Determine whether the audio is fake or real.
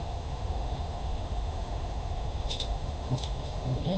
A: fake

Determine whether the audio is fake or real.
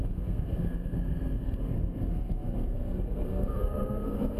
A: fake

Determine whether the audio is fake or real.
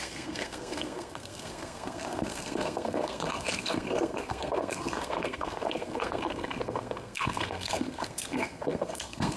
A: fake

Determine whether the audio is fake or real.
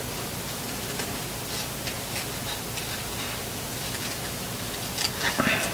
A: real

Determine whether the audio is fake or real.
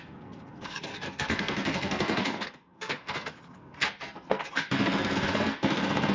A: fake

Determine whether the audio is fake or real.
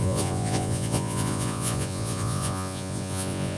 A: fake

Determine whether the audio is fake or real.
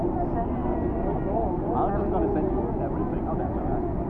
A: real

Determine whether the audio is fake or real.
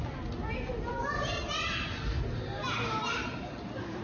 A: real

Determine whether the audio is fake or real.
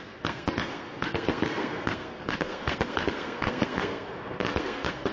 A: fake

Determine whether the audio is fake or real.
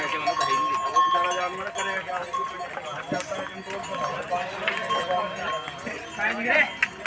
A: real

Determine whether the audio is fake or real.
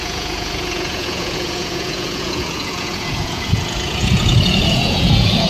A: fake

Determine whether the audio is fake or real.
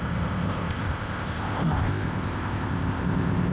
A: fake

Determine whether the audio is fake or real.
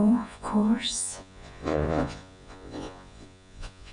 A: fake